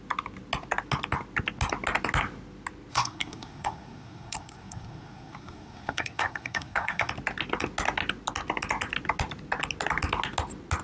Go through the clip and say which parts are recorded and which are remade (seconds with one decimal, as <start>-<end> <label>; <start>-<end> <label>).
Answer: 0.0-2.9 recorded; 2.9-7.1 remade; 7.1-10.8 recorded